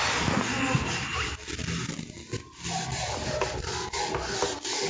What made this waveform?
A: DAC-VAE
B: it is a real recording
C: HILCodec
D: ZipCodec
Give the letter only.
B